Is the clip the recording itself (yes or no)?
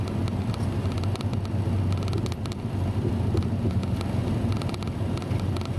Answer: yes